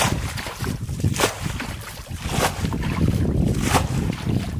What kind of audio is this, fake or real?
fake